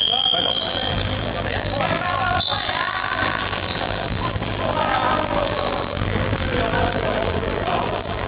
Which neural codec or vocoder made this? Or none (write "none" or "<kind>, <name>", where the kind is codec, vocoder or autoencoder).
vocoder, BigVGAN v2